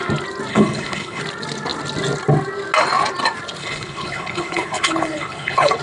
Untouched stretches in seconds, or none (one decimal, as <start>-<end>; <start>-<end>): 0.0-0.5; 1.2-3.6